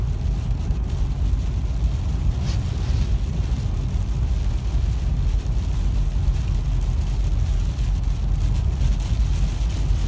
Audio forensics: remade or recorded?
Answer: recorded